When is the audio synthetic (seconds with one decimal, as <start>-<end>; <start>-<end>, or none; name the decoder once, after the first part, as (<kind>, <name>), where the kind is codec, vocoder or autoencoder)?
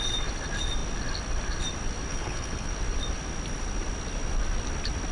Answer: 2.1-2.7 (codec, HILCodec)